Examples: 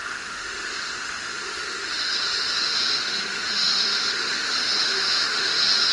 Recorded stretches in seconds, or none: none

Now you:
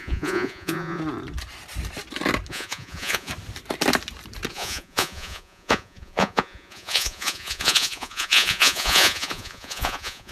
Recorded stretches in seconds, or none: 1.0-2.5; 3.3-4.5

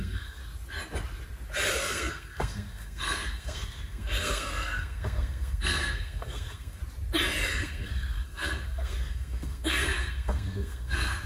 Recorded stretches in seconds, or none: 0.4-1.7; 6.8-7.5

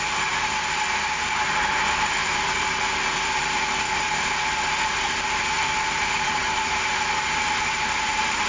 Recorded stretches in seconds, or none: 0.0-2.2; 6.7-8.5

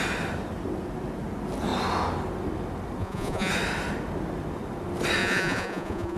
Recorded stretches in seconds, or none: 0.0-3.0; 3.5-5.2